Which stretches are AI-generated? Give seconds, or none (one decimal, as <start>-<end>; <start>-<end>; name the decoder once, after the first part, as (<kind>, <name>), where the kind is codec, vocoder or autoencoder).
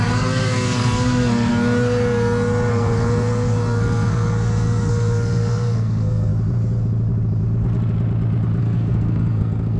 0.0-1.5 (codec, SNAC); 2.7-6.3; 8.6-9.8